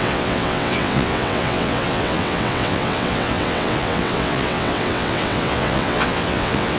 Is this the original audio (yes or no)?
no